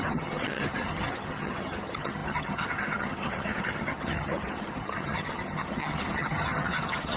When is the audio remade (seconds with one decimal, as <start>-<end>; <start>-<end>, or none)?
0.0-7.2